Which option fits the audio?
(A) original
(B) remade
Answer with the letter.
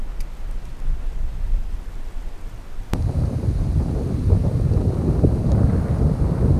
A